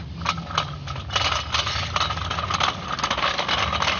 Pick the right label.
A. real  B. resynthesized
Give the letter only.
A